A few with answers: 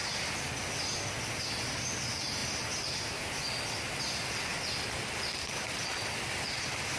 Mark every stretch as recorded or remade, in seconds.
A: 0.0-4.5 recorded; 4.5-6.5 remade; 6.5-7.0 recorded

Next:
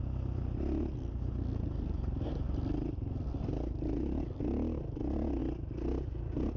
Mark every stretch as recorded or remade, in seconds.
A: 0.0-6.6 recorded

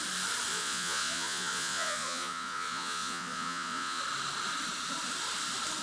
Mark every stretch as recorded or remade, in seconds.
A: 0.0-0.5 recorded; 0.5-4.0 remade; 4.0-5.8 recorded

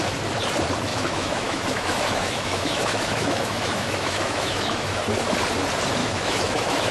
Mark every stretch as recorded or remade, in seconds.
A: 0.0-0.9 recorded; 0.9-5.0 remade; 5.0-6.0 recorded; 6.0-6.9 remade

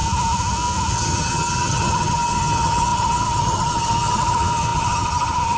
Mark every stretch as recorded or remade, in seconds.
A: 0.0-0.9 recorded; 0.9-5.6 remade

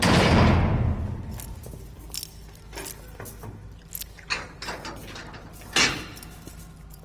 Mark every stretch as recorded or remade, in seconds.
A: 0.0-5.0 recorded; 5.0-5.5 remade; 5.5-7.0 recorded